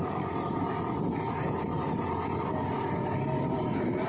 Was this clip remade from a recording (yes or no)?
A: no